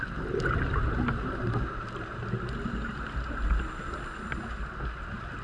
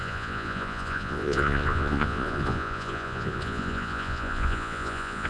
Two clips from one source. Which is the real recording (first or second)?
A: first